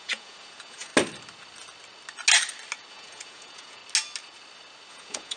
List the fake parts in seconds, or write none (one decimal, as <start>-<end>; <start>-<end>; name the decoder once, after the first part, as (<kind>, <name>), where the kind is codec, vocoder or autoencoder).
0.0-0.9 (vocoder, Vocos); 2.9-3.8; 4.9-5.4

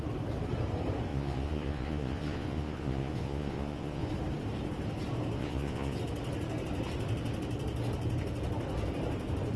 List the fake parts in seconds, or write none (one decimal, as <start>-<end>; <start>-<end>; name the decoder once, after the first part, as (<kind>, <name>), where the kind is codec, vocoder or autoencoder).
1.1-4.1 (vocoder, Vocos); 5.4-6.0